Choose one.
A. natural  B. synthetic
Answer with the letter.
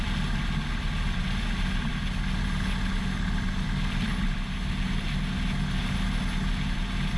A